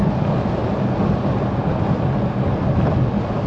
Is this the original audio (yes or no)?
yes